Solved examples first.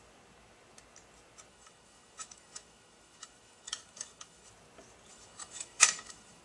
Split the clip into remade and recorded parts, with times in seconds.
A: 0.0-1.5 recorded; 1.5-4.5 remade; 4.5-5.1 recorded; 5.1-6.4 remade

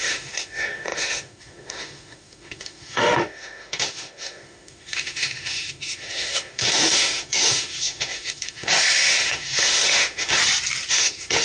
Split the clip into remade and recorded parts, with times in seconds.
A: 0.0-10.4 remade; 10.4-10.9 recorded; 10.9-11.4 remade

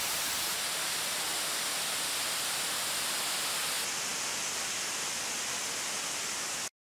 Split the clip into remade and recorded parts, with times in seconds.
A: 0.0-6.8 recorded